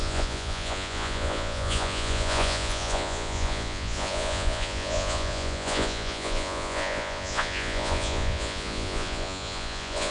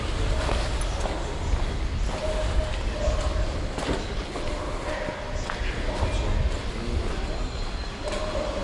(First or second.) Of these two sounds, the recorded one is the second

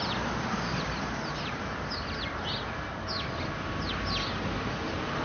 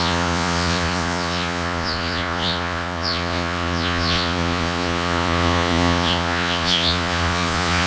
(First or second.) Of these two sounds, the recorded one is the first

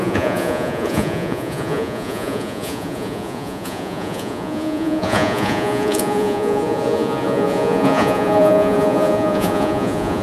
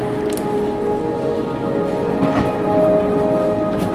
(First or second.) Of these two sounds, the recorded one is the second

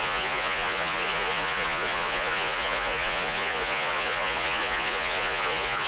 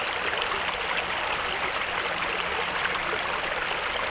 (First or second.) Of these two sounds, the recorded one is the second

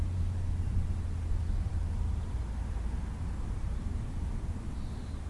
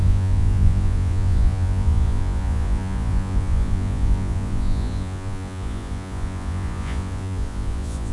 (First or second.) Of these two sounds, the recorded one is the first